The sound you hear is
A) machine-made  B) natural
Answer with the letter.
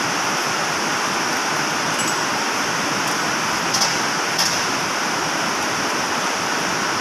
B